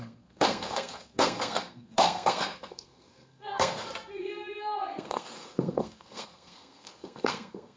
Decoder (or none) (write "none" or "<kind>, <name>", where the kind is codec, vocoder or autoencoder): codec, SNAC